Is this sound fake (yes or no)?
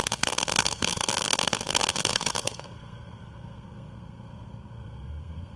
yes